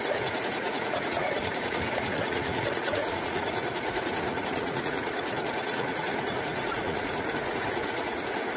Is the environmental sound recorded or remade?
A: remade